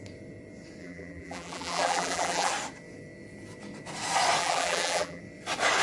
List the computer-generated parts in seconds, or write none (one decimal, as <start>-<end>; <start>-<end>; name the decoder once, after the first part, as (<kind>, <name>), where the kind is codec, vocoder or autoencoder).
0.8-2.5 (vocoder, BigVGAN v2); 4.4-5.2